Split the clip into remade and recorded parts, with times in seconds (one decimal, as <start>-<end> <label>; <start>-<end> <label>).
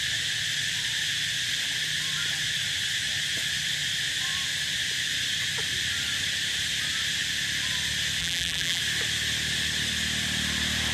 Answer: 0.0-8.2 recorded; 8.2-8.8 remade; 8.8-10.9 recorded